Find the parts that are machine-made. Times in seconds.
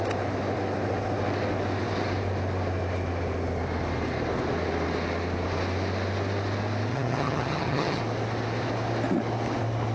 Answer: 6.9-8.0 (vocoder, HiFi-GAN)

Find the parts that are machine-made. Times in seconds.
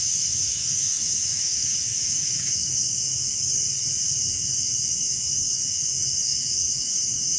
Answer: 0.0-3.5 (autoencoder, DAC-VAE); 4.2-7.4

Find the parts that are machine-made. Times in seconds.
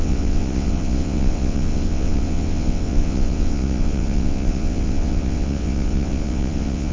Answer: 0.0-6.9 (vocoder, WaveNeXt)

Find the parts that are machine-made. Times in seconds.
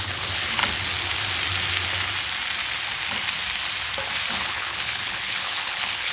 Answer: 0.0-0.6 (codec, HILCodec); 4.3-6.1